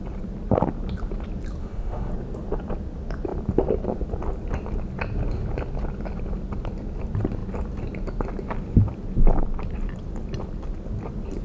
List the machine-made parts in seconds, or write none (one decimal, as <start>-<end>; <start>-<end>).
1.6-2.1